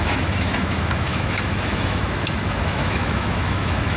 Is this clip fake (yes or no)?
yes